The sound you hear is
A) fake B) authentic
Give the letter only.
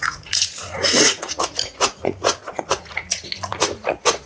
A